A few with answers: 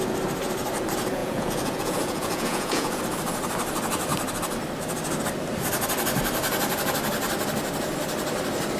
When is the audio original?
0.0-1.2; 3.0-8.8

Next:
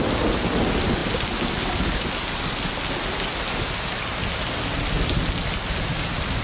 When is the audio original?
0.0-6.4

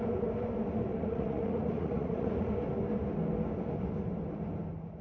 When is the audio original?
0.0-0.9; 2.5-5.0

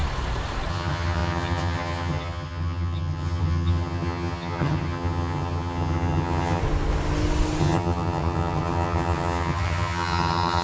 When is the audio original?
0.0-0.7; 6.6-7.6